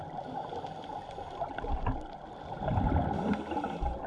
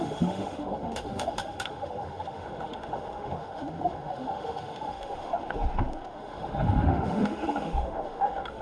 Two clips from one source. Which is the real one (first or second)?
first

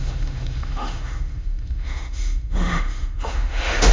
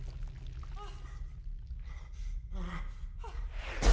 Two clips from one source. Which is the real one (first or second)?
second